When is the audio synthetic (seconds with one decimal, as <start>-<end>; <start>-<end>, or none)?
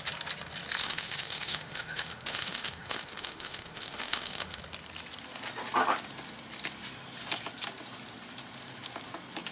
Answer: 0.8-4.6